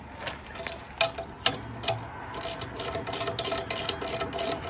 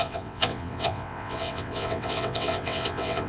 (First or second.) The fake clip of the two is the second